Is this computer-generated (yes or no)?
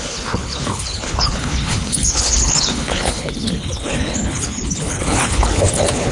yes